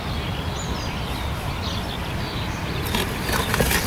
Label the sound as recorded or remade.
recorded